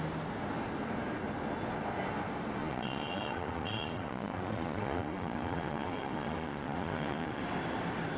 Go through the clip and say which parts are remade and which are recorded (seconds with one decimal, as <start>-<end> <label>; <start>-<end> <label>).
0.0-2.6 recorded; 2.6-7.4 remade; 7.4-8.2 recorded